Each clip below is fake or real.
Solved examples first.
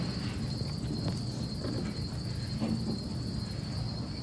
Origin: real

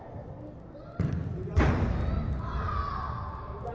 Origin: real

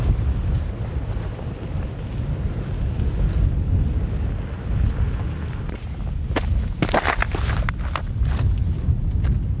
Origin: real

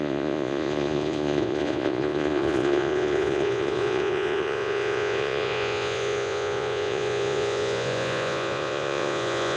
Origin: fake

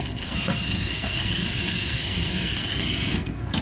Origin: fake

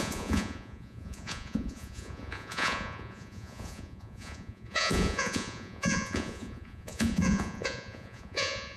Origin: fake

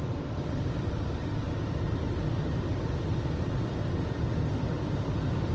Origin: fake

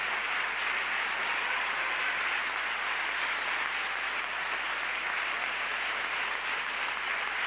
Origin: real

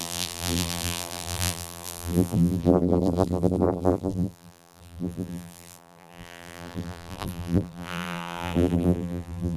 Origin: fake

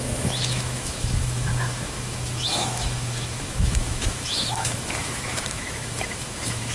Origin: fake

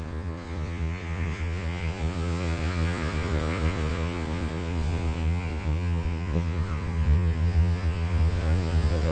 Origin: fake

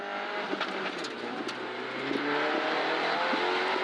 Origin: real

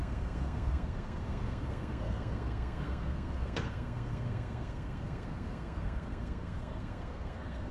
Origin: fake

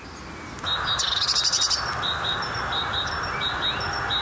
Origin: real